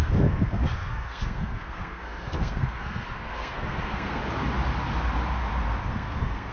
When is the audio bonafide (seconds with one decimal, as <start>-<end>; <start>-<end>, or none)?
4.2-5.9